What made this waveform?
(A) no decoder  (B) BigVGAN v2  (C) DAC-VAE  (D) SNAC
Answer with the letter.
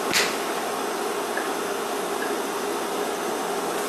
A